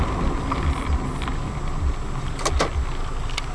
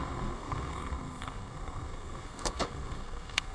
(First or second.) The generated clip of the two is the second